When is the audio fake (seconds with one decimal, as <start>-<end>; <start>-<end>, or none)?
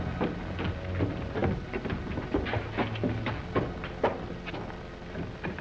none